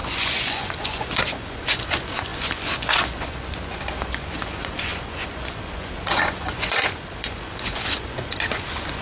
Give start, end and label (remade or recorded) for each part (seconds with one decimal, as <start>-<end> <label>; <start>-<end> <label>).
0.0-9.0 remade

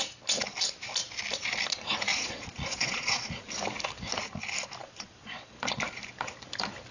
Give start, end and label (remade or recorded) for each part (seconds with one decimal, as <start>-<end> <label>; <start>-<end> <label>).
0.0-2.1 recorded; 2.1-3.4 remade; 3.4-4.8 recorded; 4.8-5.6 remade; 5.6-6.9 recorded

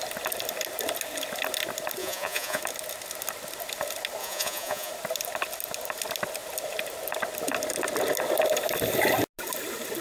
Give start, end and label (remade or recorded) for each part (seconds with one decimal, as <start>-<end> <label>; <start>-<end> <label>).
0.0-2.0 recorded; 2.0-2.6 remade; 2.6-4.2 recorded; 4.2-4.9 remade; 4.9-10.0 recorded

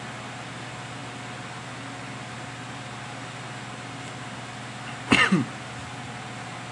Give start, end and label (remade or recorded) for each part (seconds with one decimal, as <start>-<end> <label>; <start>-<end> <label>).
0.0-6.7 recorded

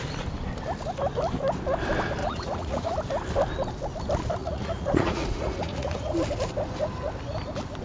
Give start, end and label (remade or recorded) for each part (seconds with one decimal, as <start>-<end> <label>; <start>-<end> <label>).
0.0-2.2 recorded; 2.2-2.9 remade; 2.9-4.4 recorded; 4.4-6.1 remade; 6.1-7.8 recorded

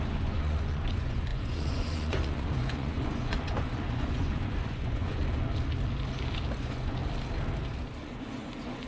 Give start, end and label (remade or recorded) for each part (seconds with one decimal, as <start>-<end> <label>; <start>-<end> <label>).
0.0-5.2 remade; 5.2-6.6 recorded; 6.6-7.0 remade; 7.0-8.0 recorded; 8.0-8.9 remade